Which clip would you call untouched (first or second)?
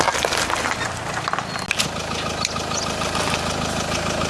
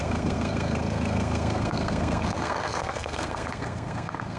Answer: first